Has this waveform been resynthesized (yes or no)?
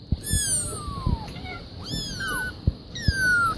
no